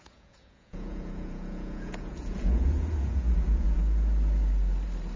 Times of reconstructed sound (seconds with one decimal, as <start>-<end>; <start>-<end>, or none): 0.0-3.8